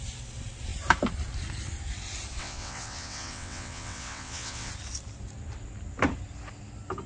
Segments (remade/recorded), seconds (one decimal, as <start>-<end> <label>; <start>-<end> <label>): 0.0-2.4 recorded; 2.4-4.7 remade; 4.7-7.1 recorded